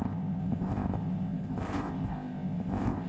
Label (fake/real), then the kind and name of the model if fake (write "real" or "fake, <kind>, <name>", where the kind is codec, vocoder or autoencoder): fake, codec, ZipCodec